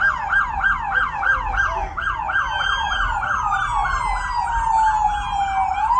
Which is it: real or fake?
real